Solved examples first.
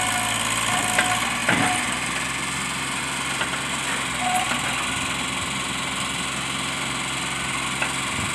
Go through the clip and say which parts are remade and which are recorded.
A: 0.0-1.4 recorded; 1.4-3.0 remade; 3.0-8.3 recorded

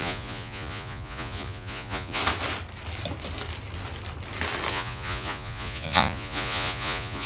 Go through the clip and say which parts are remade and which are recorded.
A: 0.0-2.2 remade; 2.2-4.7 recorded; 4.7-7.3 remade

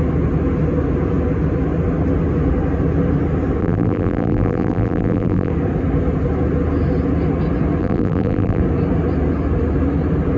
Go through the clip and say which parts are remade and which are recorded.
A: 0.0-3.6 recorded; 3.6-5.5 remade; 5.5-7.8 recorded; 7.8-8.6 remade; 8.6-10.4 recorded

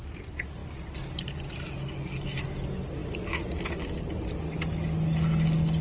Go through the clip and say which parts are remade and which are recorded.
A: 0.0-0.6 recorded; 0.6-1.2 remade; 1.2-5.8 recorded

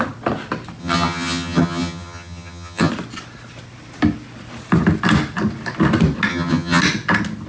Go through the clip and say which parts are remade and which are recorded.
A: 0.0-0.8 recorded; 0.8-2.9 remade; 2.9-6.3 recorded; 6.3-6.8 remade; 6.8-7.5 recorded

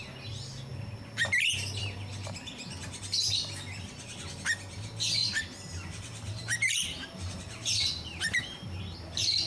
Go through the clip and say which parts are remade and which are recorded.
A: 0.0-5.2 recorded; 5.2-8.8 remade; 8.8-9.5 recorded

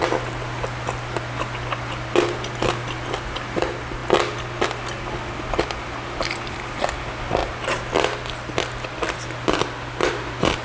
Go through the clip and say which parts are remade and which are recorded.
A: 0.0-10.6 recorded

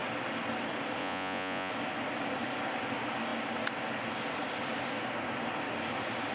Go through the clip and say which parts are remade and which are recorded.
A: 0.0-1.0 recorded; 1.0-1.7 remade; 1.7-6.3 recorded